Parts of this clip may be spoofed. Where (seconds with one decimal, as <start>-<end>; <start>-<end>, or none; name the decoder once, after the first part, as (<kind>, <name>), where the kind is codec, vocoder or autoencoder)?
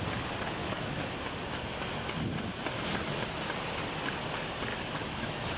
0.6-1.2 (autoencoder, DAC-VAE); 4.7-5.6